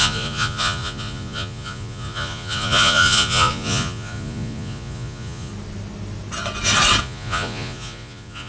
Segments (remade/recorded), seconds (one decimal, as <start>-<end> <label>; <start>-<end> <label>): 0.0-5.5 remade; 5.5-7.0 recorded; 7.0-8.5 remade